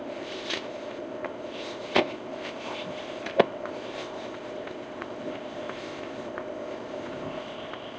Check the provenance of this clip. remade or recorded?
remade